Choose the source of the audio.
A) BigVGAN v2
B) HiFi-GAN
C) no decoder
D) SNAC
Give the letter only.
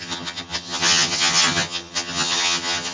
B